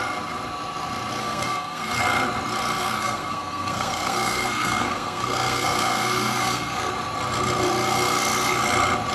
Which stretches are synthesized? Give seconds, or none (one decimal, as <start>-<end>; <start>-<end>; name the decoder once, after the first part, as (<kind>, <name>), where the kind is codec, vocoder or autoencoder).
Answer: 1.2-2.0 (codec, SNAC); 2.8-6.9

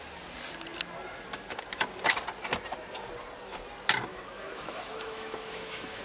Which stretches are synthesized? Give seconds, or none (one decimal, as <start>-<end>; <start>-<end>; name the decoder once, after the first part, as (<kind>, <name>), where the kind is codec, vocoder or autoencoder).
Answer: 4.1-6.0 (autoencoder, DAC-VAE)

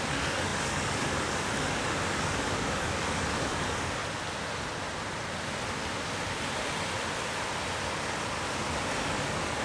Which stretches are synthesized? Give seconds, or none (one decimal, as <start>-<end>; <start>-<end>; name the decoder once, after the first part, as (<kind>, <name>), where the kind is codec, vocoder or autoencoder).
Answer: 0.0-4.0 (codec, DAC); 9.0-9.6

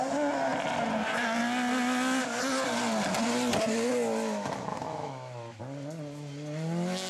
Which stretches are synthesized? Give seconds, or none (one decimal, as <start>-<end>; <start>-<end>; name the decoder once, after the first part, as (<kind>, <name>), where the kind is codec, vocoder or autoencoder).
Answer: 4.7-5.6 (autoencoder, DAC-VAE)

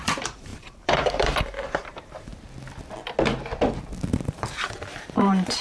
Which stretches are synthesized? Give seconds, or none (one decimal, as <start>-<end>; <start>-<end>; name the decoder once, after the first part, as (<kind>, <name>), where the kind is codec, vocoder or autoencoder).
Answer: 0.0-2.3 (vocoder, BigVGAN v2); 4.2-5.6

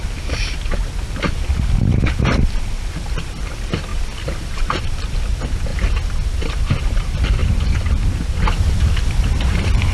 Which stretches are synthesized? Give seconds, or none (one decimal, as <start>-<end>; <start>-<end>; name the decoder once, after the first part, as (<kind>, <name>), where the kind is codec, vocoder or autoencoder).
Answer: 7.4-8.0 (vocoder, BigVGAN v2)

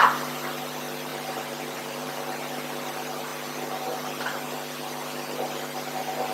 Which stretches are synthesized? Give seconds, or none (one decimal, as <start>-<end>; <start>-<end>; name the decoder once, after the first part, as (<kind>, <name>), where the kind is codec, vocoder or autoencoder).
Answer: 1.1-2.1 (vocoder, BigVGAN v2)

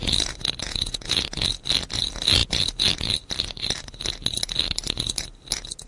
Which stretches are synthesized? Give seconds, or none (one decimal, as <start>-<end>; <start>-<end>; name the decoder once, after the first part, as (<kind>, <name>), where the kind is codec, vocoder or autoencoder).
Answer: 0.6-1.2 (vocoder, Vocos)